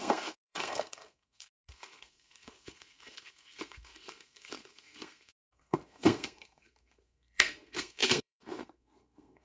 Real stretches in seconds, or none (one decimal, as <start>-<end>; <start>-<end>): none

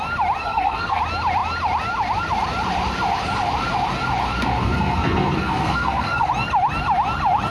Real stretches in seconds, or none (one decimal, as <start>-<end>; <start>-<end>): 0.0-0.4; 1.0-4.5; 6.3-7.5

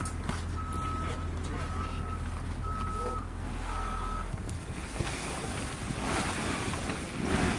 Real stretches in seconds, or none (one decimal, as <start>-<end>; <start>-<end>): 0.0-3.0; 5.3-7.6

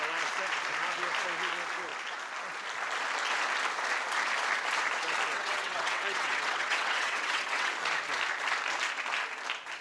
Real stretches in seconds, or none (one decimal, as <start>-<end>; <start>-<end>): 0.0-5.3; 7.7-9.8

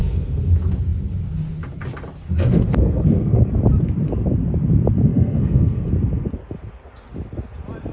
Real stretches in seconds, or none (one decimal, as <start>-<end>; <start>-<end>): 0.5-2.5; 3.4-5.1; 5.9-7.9

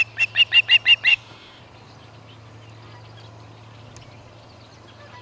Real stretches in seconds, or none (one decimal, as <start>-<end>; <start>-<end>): 0.0-1.1; 1.6-5.2

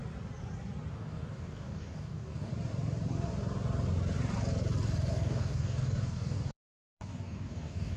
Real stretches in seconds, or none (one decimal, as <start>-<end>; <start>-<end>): 0.0-0.9; 2.5-5.1